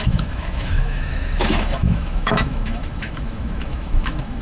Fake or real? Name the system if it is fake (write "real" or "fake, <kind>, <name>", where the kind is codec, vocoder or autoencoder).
fake, autoencoder, DAC-VAE